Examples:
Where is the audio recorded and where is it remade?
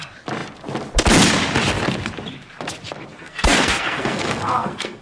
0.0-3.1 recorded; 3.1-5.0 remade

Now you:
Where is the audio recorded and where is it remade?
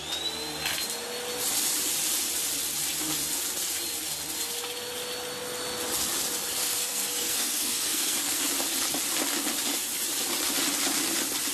0.0-6.6 recorded; 6.6-8.4 remade; 8.4-11.5 recorded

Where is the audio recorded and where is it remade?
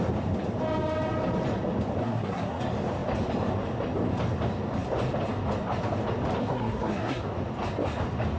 0.0-2.0 recorded; 2.0-2.6 remade; 2.6-6.4 recorded; 6.4-7.2 remade; 7.2-8.4 recorded